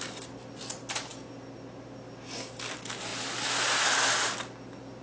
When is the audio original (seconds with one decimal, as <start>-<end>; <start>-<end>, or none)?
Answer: 0.0-5.0